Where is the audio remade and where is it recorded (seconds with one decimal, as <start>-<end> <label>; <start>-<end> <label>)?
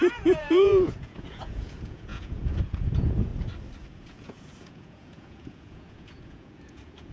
0.0-3.3 remade; 3.3-3.9 recorded; 3.9-7.1 remade